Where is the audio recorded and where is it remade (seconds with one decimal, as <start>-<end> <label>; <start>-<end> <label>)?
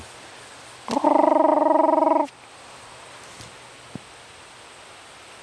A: 0.0-5.4 recorded